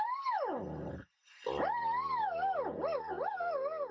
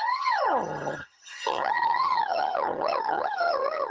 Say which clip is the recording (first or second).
first